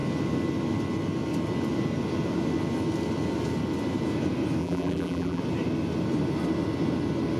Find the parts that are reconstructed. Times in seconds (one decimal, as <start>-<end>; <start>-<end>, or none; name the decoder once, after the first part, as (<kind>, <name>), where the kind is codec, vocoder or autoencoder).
4.6-5.4 (vocoder, BigVGAN v2)